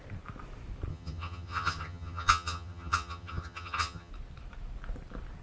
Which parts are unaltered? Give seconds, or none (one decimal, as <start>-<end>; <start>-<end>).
0.0-0.9; 4.1-5.4